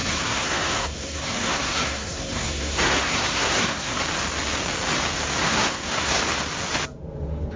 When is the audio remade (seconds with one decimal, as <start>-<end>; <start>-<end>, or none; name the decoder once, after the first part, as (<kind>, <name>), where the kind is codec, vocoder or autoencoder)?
0.0-4.0 (codec, SNAC); 5.4-6.2